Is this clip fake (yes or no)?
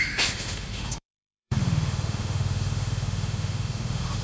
yes